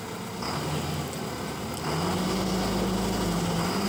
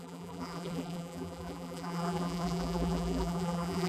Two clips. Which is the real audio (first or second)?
first